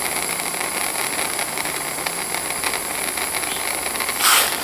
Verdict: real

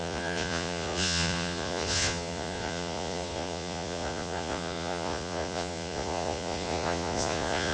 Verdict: fake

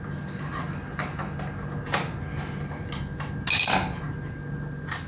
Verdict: real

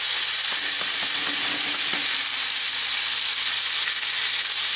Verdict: real